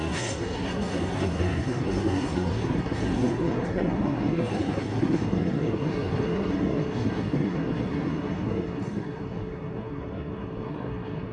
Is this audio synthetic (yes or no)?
yes